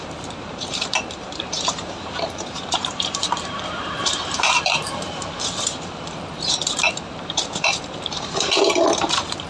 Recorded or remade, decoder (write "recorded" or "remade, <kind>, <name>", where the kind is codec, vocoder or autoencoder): remade, vocoder, BigVGAN v2